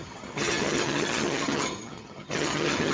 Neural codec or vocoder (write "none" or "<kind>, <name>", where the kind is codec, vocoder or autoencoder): vocoder, HiFi-GAN